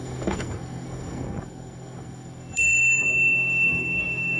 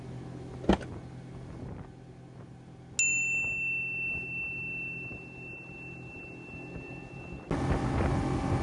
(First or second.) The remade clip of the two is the first